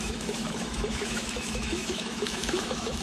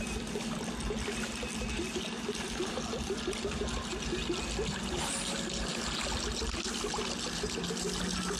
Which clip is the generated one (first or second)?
first